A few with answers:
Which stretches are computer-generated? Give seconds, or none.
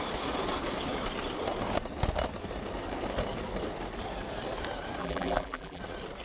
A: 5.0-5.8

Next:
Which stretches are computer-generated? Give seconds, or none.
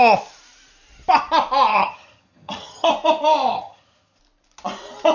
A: 1.7-2.9; 3.5-4.2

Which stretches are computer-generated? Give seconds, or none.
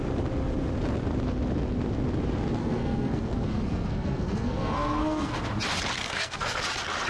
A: 2.6-5.4; 6.0-6.6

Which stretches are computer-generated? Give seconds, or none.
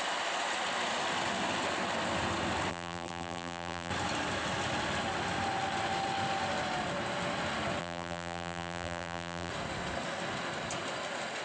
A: 2.7-3.9; 7.8-9.5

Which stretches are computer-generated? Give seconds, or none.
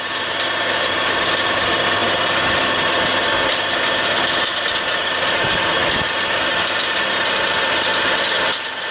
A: none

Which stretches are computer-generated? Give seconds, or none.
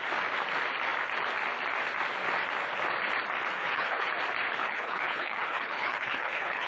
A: 3.6-4.1; 4.6-6.7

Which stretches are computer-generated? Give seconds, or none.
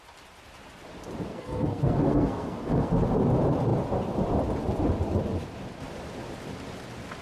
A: 1.3-2.9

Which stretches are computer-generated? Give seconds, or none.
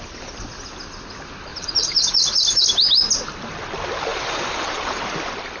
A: 1.5-2.1; 4.1-5.0